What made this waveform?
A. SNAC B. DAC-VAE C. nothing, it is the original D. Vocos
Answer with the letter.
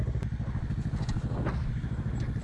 C